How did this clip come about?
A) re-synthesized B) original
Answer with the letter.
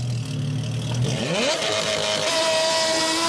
B